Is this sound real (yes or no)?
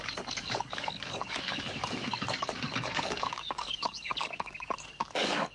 no